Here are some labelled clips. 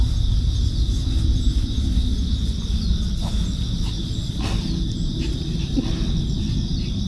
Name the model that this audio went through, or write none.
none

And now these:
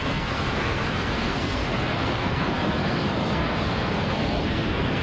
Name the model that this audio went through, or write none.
codec, SNAC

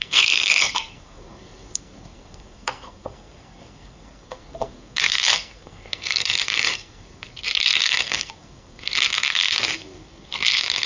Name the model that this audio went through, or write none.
codec, SNAC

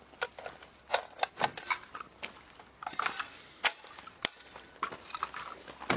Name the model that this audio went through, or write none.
none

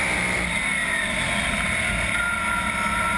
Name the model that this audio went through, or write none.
none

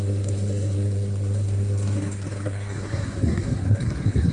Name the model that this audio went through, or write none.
codec, SNAC